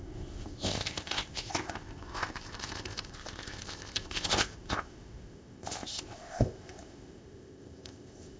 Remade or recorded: remade